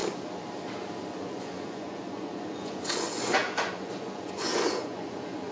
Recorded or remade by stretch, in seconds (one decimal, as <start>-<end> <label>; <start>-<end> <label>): 0.0-1.1 recorded; 1.1-5.5 remade